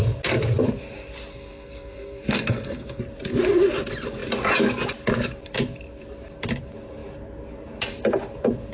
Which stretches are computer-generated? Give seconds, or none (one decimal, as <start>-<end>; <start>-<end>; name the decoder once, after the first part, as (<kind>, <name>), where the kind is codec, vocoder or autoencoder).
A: 1.3-3.0 (codec, SNAC)